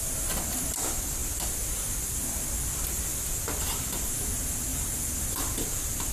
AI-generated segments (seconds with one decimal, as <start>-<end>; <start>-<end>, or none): none